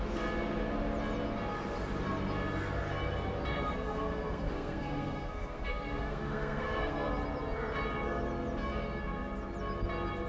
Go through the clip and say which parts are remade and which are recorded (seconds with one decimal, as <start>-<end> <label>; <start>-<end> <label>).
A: 0.0-3.5 recorded; 3.5-7.1 remade; 7.1-10.3 recorded